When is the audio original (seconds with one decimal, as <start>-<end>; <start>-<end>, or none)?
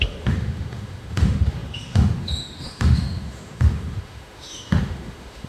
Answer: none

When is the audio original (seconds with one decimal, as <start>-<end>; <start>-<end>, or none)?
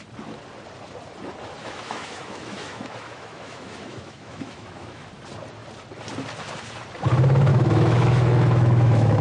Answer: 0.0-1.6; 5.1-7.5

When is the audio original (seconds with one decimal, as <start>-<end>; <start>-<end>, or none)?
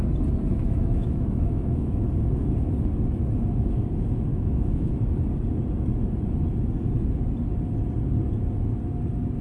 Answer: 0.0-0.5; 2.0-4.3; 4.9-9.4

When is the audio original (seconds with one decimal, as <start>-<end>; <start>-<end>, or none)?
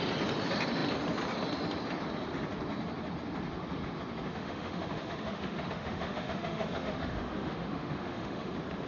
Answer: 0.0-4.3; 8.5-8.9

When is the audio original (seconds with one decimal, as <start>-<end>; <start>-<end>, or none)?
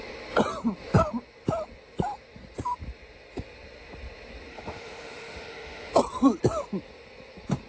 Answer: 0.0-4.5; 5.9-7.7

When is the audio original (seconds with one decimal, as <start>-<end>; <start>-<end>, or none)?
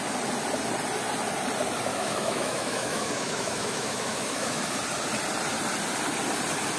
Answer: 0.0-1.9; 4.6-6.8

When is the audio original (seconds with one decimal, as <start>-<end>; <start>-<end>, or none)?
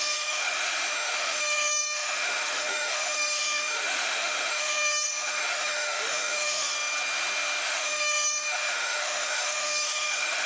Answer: 6.7-7.6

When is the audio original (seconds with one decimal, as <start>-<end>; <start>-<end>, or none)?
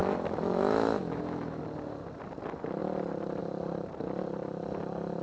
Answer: 1.6-5.2